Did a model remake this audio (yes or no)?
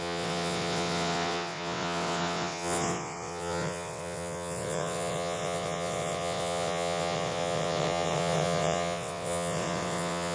yes